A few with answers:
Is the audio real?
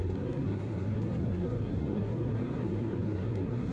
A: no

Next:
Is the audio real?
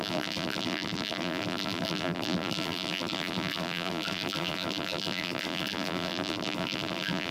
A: no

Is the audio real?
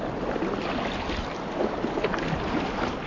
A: yes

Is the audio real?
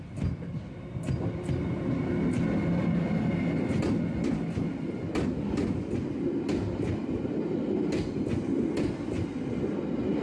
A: yes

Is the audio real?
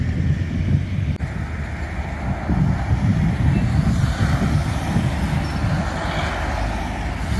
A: yes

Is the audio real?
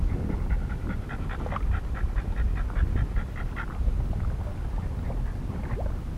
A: yes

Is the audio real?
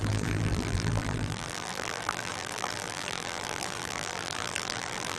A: no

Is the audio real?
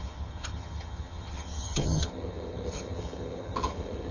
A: no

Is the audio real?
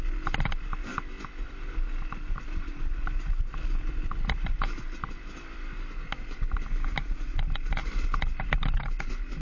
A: yes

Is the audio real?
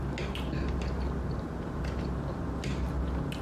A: yes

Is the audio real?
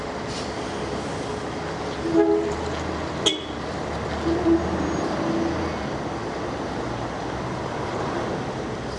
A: yes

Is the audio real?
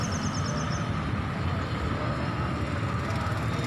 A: yes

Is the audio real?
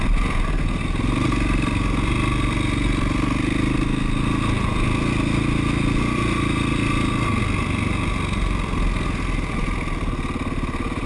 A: yes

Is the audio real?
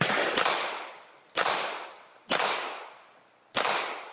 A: yes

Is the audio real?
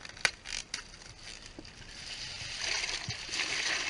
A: yes